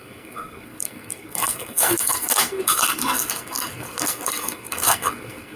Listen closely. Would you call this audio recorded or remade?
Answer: remade